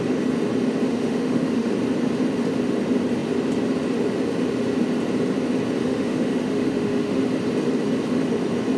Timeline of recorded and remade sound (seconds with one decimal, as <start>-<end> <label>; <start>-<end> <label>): 0.0-0.9 recorded; 0.9-1.7 remade; 1.7-5.8 recorded; 5.8-7.2 remade; 7.2-8.8 recorded